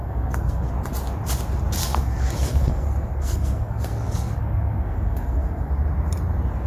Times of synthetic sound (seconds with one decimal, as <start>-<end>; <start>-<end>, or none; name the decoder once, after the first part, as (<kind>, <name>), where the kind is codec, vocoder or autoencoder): 0.0-0.7 (codec, SNAC); 1.8-5.7